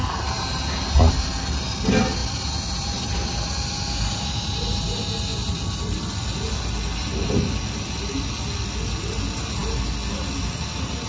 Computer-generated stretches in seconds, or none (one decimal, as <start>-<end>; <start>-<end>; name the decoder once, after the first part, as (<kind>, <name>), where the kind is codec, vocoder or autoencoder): none